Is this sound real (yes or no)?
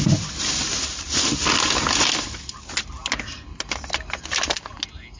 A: yes